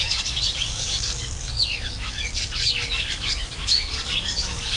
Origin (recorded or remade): remade